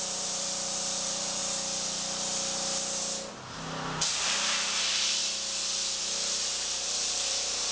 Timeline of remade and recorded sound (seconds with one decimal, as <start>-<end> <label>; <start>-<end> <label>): 0.0-1.4 remade; 1.4-3.3 recorded; 3.3-5.2 remade; 5.2-6.0 recorded; 6.0-7.7 remade